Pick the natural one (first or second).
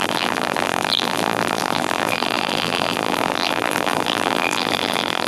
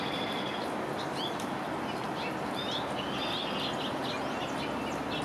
second